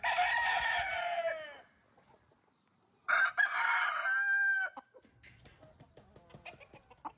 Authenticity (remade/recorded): recorded